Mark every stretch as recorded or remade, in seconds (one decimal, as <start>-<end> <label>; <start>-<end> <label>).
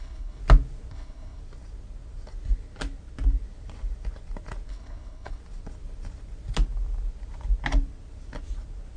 0.0-0.4 remade; 0.4-0.9 recorded; 0.9-1.4 remade; 1.4-4.7 recorded; 4.7-5.4 remade; 5.4-9.0 recorded